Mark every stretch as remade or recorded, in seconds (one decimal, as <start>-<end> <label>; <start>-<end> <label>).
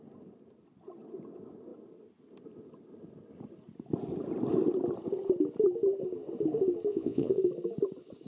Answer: 0.0-6.9 recorded; 6.9-7.4 remade; 7.4-8.3 recorded